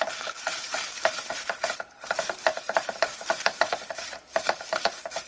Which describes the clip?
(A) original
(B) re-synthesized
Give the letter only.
B